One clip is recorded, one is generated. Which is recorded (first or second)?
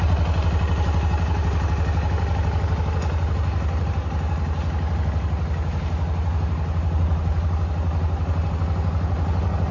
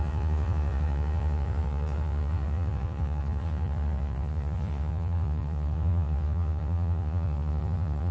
first